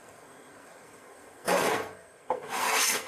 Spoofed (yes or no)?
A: yes